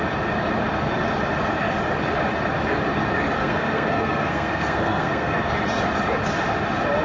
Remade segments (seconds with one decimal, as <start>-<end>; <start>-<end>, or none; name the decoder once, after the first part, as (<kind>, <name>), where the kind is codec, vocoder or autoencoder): 3.4-5.5 (codec, SNAC)